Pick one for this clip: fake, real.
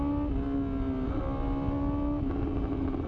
real